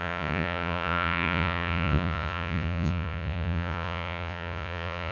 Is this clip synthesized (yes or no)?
yes